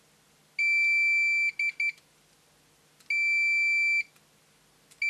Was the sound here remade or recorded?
recorded